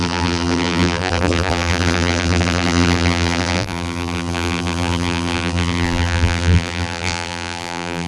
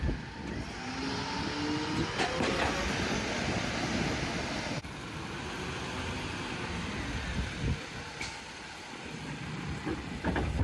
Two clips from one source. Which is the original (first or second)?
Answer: second